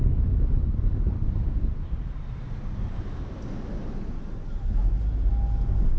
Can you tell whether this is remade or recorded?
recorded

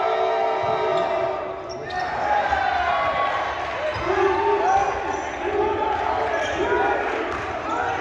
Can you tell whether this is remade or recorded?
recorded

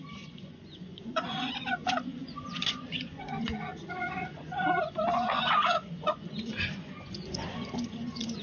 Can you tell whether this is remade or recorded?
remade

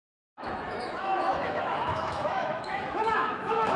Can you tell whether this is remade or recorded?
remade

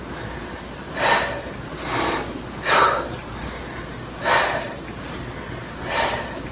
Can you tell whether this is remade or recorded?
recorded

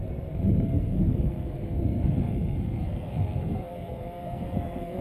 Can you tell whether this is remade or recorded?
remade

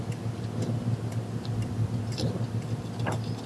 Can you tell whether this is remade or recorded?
recorded